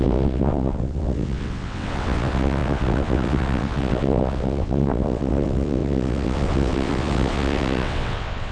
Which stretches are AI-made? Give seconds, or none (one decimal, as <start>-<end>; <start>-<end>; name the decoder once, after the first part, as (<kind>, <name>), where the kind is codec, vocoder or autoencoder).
0.0-8.5 (vocoder, WaveNeXt)